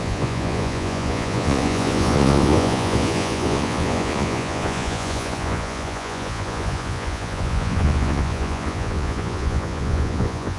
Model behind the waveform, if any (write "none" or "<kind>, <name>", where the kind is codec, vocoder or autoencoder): vocoder, Vocos